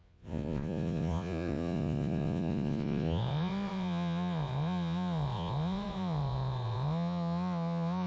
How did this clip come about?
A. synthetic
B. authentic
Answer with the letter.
A